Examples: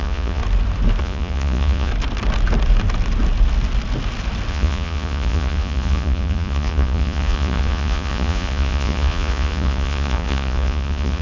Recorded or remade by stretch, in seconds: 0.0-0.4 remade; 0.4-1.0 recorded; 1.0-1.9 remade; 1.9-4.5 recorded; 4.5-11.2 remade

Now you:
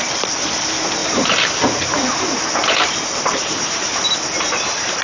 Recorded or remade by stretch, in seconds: 0.0-1.0 recorded; 1.0-4.0 remade; 4.0-5.0 recorded

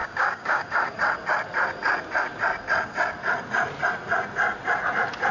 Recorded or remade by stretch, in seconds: 0.0-0.7 remade; 0.7-5.3 recorded

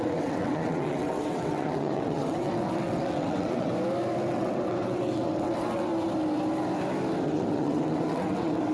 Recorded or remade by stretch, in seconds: 0.0-3.7 remade; 3.7-4.3 recorded; 4.3-5.9 remade; 5.9-7.2 recorded; 7.2-8.7 remade

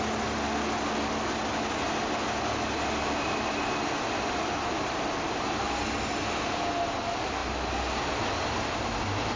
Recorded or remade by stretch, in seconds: 0.0-9.4 recorded